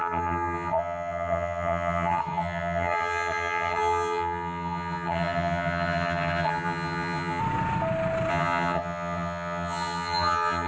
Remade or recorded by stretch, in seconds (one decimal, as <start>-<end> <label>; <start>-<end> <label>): 0.0-7.4 remade; 7.4-8.3 recorded; 8.3-10.7 remade